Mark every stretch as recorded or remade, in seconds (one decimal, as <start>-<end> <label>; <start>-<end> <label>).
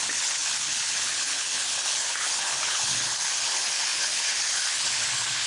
0.0-5.5 remade